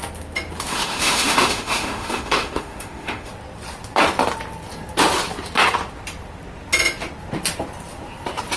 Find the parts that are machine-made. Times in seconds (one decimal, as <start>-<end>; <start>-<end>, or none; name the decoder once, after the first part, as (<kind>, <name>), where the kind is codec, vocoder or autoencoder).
0.7-3.3 (autoencoder, DAC-VAE)